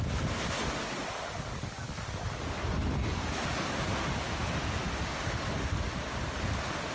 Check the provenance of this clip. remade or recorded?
recorded